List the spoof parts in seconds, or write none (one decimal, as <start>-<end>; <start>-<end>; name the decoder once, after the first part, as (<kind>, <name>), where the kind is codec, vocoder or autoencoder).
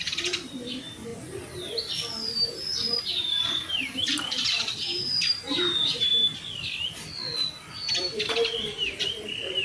0.0-1.1 (vocoder, BigVGAN v2); 3.0-6.1; 7.9-9.6